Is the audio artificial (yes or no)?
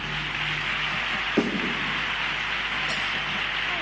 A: no